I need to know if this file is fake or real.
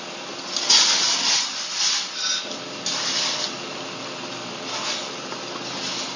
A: real